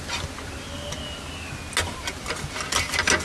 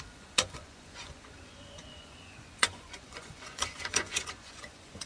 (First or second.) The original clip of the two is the first